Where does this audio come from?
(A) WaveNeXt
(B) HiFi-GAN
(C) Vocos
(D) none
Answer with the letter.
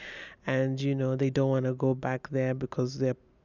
D